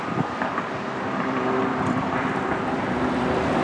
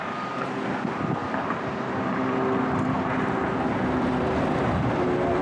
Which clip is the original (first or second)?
second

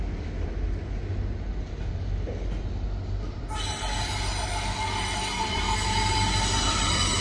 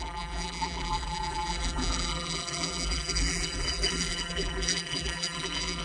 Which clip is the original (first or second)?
first